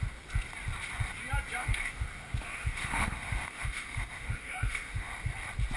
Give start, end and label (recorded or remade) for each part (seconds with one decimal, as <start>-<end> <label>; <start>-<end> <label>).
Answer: 0.0-1.6 recorded; 1.6-5.1 remade; 5.1-5.8 recorded